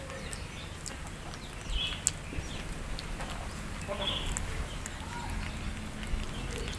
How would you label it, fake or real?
real